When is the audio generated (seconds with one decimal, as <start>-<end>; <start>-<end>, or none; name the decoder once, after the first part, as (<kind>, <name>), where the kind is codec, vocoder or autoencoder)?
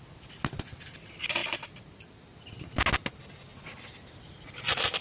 none